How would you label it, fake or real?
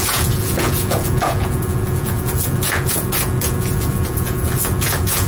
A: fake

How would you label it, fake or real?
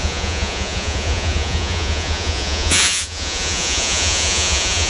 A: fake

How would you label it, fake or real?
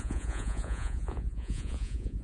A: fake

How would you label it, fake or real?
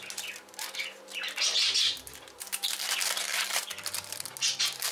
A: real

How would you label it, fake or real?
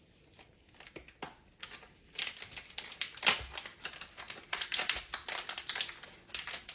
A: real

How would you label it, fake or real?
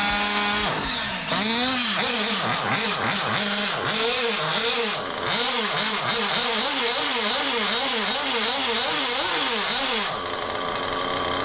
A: real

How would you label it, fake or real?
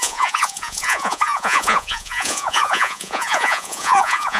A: fake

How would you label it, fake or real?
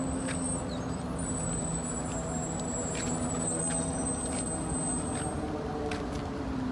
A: real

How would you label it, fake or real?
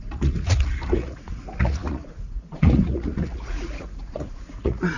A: fake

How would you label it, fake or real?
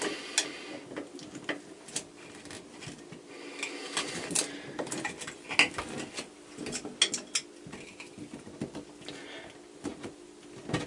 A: real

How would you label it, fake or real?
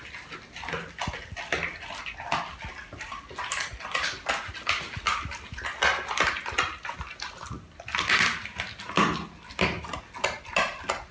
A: real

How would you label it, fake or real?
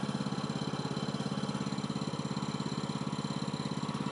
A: real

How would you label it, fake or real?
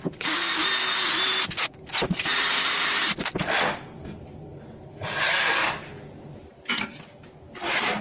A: real